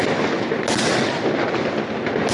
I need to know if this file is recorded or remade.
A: recorded